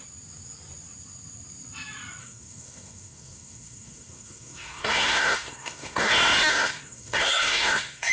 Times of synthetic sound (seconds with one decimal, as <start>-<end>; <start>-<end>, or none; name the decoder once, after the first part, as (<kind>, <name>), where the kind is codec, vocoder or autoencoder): 2.2-6.1 (codec, SNAC); 6.5-8.1